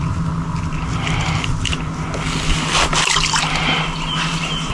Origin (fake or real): real